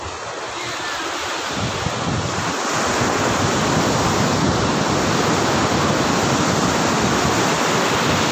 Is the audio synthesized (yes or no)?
no